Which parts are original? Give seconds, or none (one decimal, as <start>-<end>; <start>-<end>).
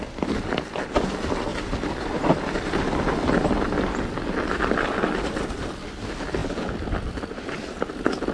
0.0-6.4; 7.8-8.3